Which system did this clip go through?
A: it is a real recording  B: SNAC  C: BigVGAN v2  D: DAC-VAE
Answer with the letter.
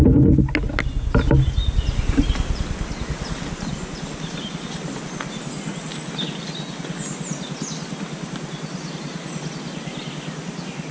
A